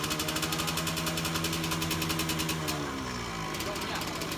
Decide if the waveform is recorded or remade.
recorded